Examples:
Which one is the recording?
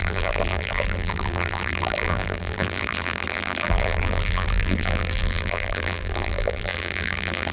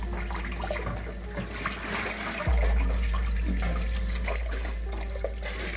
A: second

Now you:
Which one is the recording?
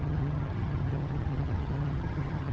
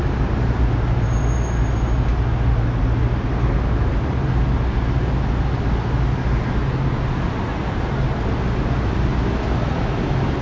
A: second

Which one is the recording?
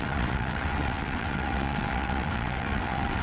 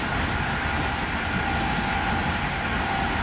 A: second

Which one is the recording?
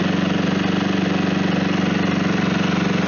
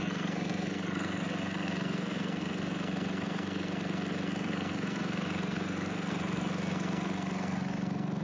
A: first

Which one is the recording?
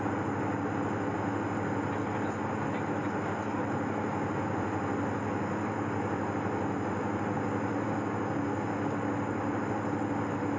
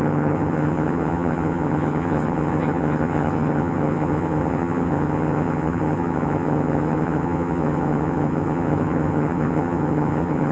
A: first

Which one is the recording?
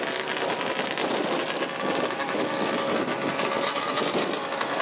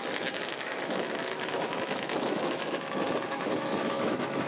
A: first